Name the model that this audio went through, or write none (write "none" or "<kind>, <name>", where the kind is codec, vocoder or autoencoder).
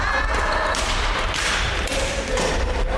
none